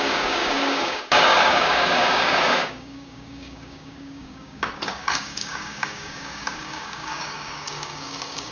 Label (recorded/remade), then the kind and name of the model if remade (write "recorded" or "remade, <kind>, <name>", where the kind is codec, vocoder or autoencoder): remade, codec, DAC